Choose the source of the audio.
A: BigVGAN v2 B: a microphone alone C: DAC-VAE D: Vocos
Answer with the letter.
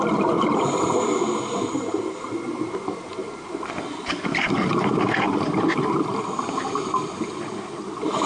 B